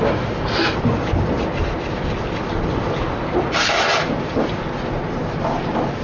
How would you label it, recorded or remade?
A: recorded